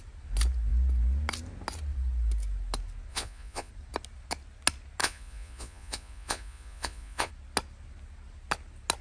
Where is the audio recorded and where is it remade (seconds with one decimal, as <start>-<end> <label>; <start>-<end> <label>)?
0.0-3.1 recorded; 3.1-3.7 remade; 3.7-5.0 recorded; 5.0-7.3 remade; 7.3-9.0 recorded